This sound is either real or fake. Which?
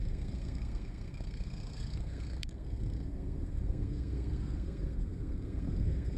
fake